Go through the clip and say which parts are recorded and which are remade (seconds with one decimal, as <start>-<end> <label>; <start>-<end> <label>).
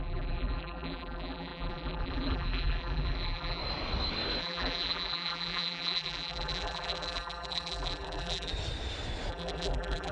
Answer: 0.0-3.6 remade; 3.6-4.4 recorded; 4.4-8.5 remade; 8.5-9.3 recorded; 9.3-10.1 remade